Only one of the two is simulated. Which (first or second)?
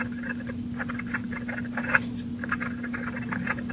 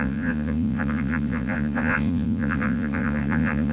second